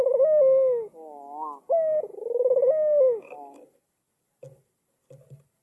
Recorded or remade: recorded